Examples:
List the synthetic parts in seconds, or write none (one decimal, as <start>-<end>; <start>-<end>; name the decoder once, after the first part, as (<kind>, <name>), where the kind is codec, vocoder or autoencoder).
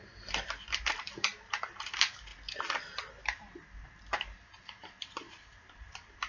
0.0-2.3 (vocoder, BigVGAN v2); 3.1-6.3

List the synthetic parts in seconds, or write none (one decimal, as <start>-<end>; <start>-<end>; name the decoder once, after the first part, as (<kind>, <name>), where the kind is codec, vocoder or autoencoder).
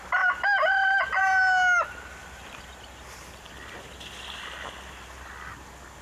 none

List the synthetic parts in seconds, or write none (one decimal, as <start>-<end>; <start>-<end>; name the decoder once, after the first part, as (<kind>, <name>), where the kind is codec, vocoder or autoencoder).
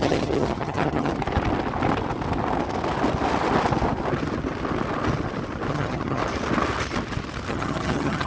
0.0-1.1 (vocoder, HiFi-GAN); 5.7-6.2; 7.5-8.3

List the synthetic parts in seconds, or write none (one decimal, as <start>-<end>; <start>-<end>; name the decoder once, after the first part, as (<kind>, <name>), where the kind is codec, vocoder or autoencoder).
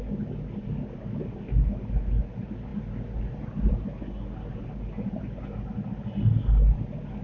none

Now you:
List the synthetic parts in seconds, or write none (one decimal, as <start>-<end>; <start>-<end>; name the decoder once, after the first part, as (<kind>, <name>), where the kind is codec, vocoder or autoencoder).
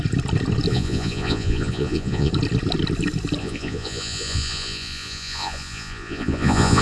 0.7-2.3 (vocoder, Vocos); 3.4-6.8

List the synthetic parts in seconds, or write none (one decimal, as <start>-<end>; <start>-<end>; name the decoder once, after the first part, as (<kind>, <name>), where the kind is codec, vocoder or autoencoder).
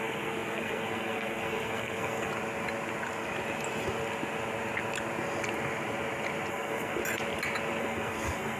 0.0-2.3 (codec, SNAC); 6.5-7.0; 7.8-8.6